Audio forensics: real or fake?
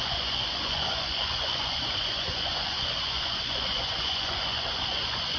fake